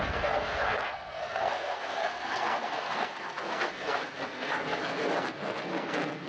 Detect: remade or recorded remade